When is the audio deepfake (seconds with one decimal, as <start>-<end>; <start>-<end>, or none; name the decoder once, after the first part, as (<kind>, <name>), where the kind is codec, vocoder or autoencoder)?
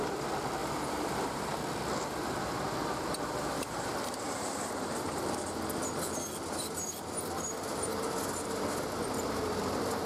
0.6-1.6 (vocoder, BigVGAN v2); 2.8-5.4